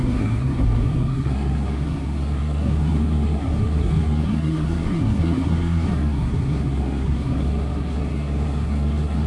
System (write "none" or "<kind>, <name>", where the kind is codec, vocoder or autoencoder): codec, SNAC